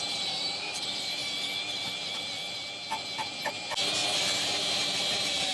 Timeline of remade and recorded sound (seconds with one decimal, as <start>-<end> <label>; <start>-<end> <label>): 0.0-1.2 remade; 1.2-4.4 recorded; 4.4-5.5 remade